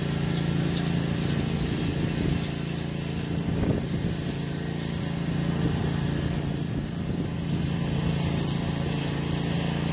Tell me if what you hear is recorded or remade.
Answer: recorded